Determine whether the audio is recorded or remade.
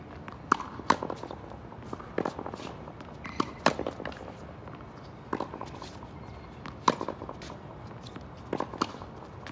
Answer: recorded